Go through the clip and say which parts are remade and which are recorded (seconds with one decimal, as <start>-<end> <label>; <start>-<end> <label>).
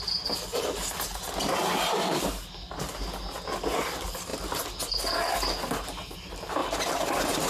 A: 0.0-7.5 recorded